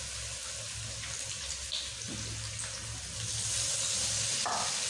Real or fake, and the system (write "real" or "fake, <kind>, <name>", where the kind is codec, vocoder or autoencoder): real